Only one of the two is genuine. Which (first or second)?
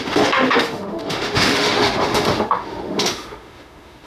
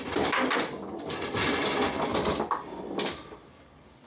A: second